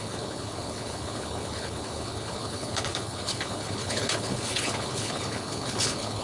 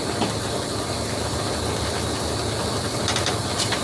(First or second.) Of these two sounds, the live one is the second